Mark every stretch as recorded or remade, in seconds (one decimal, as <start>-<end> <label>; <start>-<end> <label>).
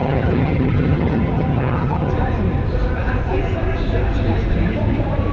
0.0-2.1 remade; 2.1-5.3 recorded